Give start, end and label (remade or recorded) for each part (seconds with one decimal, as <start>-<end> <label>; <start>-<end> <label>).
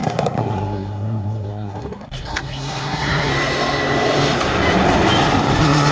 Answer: 0.0-3.3 remade; 3.3-5.9 recorded